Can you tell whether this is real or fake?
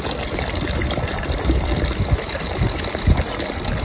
real